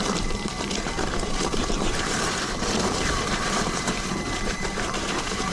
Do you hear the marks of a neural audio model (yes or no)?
yes